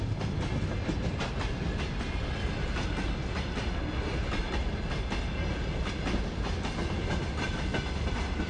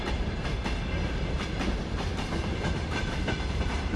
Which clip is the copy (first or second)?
second